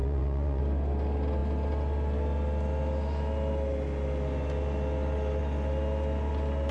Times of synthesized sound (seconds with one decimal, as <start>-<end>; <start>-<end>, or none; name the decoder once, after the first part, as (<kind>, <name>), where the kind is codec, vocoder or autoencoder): 0.0-0.6 (vocoder, Vocos)